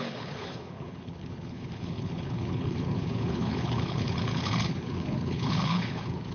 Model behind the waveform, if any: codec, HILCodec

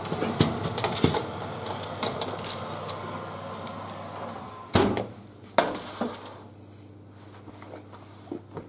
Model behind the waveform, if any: none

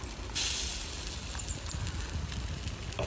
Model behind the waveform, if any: none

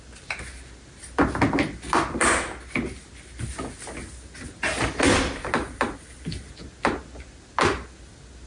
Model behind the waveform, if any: none